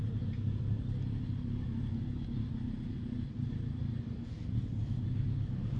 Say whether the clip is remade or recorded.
recorded